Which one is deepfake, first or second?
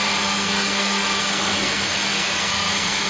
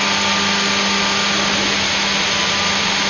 first